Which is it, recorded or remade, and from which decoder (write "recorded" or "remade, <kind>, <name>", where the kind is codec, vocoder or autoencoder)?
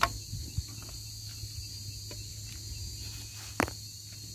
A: recorded